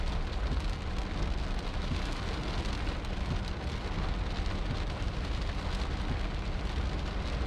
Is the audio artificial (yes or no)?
no